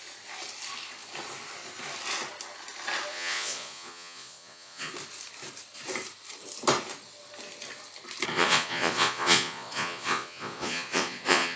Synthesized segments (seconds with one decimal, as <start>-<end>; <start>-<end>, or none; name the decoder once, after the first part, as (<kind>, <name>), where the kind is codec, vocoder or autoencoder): 3.1-4.9 (vocoder, Vocos); 8.3-11.6

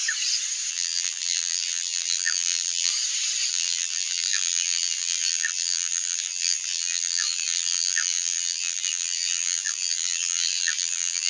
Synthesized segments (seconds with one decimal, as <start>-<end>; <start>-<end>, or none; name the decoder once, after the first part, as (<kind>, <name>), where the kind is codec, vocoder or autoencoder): 0.7-2.9 (vocoder, BigVGAN v2); 3.5-11.3

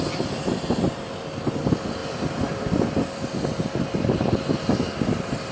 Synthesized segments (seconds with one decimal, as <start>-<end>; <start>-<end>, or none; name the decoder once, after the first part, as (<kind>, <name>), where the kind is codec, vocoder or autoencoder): 2.0-3.3 (vocoder, BigVGAN v2)

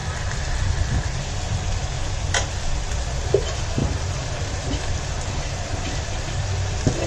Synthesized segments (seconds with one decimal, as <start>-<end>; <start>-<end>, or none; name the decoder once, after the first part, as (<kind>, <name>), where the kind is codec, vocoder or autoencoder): 1.0-1.8 (vocoder, BigVGAN v2); 2.8-7.1

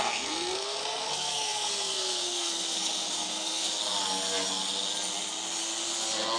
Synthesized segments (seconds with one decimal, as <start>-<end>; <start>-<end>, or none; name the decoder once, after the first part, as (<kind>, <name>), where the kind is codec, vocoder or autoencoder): 0.0-3.8 (codec, SNAC)